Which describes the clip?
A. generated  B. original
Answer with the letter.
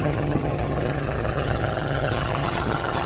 A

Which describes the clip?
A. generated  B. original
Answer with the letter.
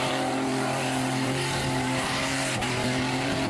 A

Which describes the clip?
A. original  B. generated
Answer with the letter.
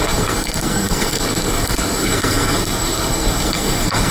B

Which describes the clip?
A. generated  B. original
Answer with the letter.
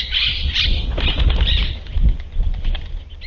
B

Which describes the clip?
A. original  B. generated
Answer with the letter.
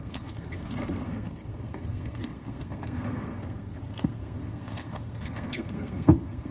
B